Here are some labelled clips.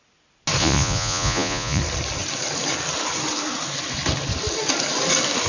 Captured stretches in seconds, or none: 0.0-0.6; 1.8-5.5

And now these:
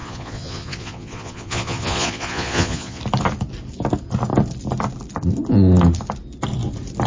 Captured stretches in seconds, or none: 3.0-7.1

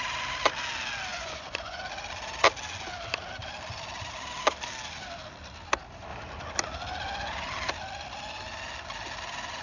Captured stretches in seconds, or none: 0.0-1.1; 1.8-9.6

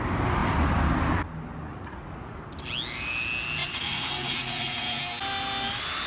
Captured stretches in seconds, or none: 0.0-1.7; 2.4-3.6; 5.0-6.1

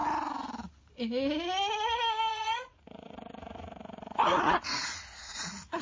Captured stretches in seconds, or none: 0.0-2.3

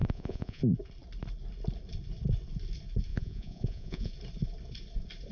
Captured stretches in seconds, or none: 0.6-3.1; 4.1-5.3